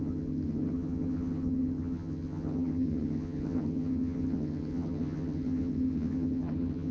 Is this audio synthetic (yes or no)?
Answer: yes